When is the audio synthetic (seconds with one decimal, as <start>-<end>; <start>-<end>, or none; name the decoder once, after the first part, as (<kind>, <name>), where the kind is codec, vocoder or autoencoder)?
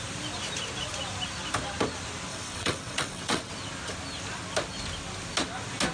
2.3-3.5 (vocoder, WaveNeXt)